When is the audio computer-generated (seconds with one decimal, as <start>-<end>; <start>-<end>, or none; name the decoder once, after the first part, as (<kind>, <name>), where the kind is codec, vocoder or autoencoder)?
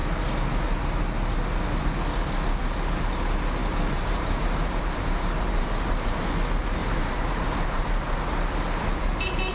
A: 3.6-6.3 (vocoder, BigVGAN v2); 6.8-8.2